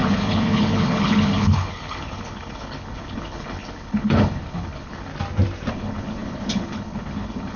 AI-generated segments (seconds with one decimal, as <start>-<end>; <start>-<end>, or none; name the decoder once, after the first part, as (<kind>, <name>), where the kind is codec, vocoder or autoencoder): 0.0-5.1 (codec, HILCodec); 5.7-7.6